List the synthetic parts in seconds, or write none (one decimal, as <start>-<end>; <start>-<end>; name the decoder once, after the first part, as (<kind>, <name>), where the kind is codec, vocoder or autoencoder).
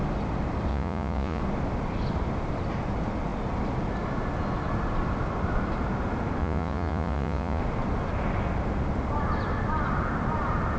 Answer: 0.7-1.4 (vocoder, Vocos); 6.4-7.6